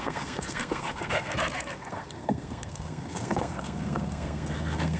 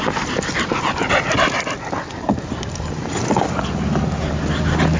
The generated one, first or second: first